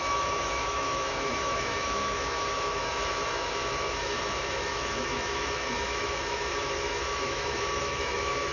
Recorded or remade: remade